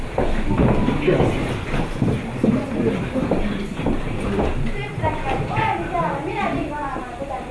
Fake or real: real